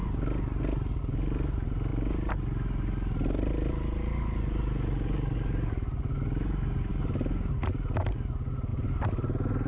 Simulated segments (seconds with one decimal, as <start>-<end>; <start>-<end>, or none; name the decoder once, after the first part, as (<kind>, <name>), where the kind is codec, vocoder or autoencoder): none